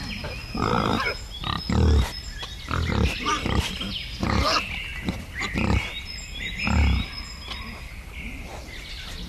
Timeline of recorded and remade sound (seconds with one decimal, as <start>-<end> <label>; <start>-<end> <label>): 0.0-4.9 recorded; 4.9-6.0 remade; 6.0-9.3 recorded